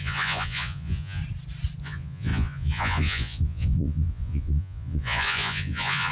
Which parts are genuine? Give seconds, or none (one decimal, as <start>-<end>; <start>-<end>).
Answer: 1.2-1.8